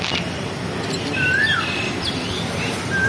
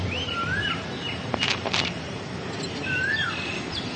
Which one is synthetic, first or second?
second